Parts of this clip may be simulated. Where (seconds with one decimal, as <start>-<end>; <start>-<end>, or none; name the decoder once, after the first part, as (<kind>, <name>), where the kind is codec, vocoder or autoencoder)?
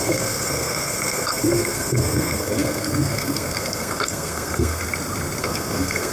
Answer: 0.0-4.8 (codec, SNAC); 5.4-6.1